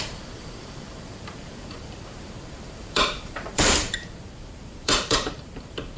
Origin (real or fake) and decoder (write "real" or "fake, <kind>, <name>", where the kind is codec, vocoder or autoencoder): fake, vocoder, BigVGAN v2